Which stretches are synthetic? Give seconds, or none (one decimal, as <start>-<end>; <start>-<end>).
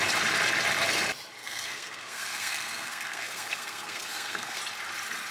1.4-4.6